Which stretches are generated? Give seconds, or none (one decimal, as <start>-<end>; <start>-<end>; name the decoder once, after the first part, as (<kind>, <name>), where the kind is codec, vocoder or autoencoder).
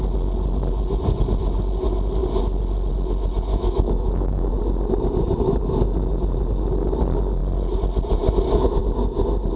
3.5-4.5 (autoencoder, DAC-VAE)